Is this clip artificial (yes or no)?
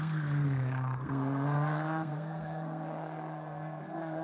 yes